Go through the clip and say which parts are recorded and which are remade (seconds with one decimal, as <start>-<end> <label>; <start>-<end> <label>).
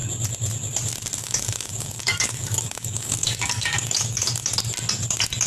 0.0-1.2 recorded; 1.2-4.5 remade; 4.5-5.5 recorded